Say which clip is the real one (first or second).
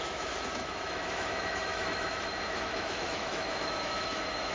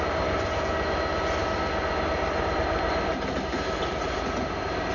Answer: second